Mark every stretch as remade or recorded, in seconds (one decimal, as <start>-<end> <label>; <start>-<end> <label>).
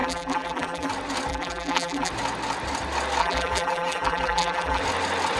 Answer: 0.0-0.9 remade; 0.9-1.3 recorded; 1.3-2.1 remade; 2.1-3.2 recorded; 3.2-4.8 remade; 4.8-5.4 recorded